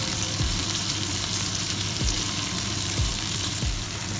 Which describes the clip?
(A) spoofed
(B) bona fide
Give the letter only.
A